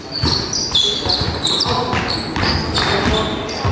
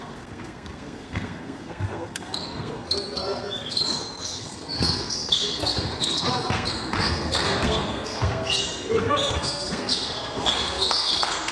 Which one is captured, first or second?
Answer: first